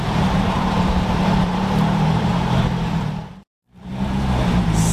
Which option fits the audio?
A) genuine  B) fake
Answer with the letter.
B